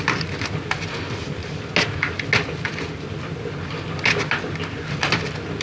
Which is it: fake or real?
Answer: real